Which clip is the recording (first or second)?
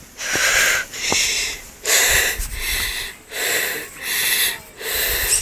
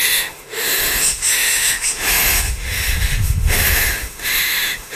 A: first